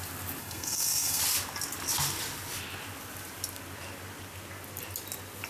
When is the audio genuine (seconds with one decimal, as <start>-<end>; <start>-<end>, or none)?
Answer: 0.0-0.4; 1.2-5.5

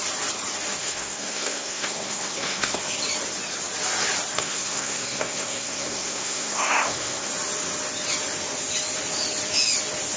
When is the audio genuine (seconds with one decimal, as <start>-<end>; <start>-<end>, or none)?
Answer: 0.0-0.8; 2.8-4.3; 7.3-10.2

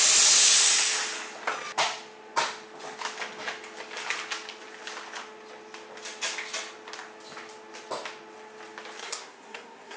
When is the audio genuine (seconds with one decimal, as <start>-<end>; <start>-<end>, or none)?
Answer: 0.0-9.0

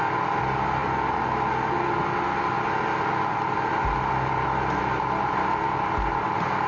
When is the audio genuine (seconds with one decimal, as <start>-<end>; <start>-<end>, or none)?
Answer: 0.0-6.7